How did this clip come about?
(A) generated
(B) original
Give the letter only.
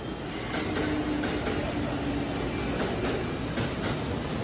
B